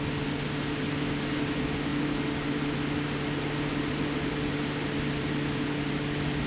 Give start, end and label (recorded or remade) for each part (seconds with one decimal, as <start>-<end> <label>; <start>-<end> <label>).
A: 0.0-6.5 recorded